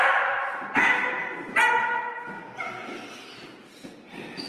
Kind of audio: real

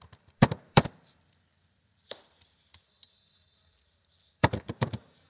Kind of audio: fake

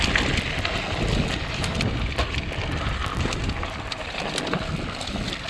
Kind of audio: real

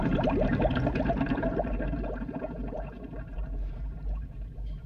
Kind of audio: fake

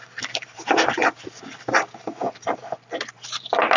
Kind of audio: fake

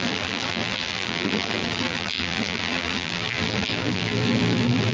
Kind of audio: fake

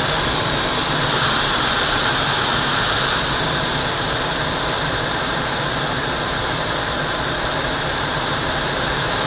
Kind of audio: fake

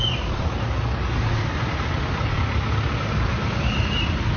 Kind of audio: real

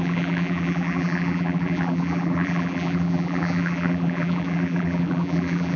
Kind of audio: fake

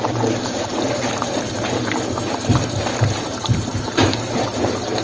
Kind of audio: fake